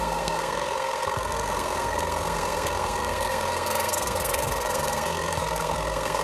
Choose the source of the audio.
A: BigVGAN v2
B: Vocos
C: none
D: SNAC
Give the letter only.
D